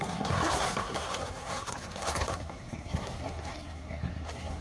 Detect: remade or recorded remade